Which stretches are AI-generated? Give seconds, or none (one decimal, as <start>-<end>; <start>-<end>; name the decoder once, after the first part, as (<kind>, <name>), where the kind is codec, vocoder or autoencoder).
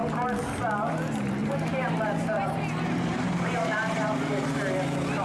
1.4-4.5 (vocoder, BigVGAN v2)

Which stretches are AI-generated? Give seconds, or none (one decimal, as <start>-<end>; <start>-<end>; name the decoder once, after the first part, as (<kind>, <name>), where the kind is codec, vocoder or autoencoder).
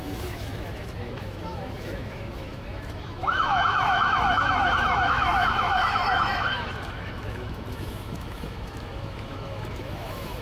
0.0-10.4 (autoencoder, DAC-VAE)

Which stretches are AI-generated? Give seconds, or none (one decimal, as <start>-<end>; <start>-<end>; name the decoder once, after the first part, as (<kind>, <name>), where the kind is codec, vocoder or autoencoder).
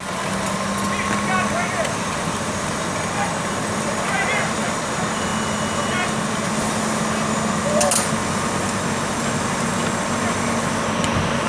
none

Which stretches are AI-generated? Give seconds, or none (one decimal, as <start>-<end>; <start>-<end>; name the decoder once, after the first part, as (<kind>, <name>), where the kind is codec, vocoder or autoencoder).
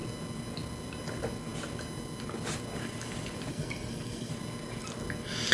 3.5-4.3 (codec, SNAC)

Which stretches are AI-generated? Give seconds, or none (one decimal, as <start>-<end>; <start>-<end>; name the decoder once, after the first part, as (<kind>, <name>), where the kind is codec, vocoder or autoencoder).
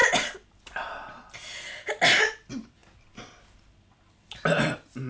none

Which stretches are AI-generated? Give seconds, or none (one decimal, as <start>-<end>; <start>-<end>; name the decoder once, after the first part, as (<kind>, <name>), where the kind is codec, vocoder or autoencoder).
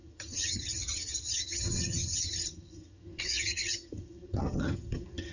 0.0-5.3 (vocoder, HiFi-GAN)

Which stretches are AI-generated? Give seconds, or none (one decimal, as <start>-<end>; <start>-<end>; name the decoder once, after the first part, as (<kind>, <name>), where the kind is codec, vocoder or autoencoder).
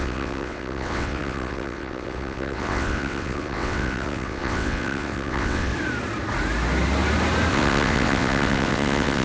0.0-5.7 (vocoder, WaveNeXt); 7.5-9.2